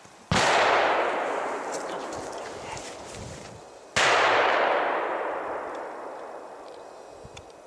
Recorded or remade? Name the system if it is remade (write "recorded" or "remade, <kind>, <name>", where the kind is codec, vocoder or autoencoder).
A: recorded